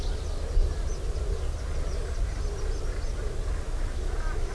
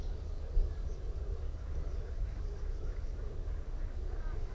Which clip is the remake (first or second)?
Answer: second